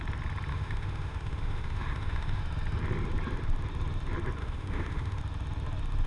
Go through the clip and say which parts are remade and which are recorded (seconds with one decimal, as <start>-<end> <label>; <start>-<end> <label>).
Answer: 0.0-0.5 recorded; 0.5-2.4 remade; 2.4-4.4 recorded; 4.4-5.2 remade; 5.2-6.1 recorded